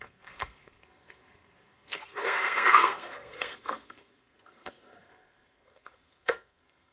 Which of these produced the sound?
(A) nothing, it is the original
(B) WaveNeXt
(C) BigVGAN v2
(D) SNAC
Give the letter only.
D